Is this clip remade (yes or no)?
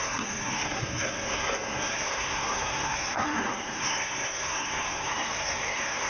yes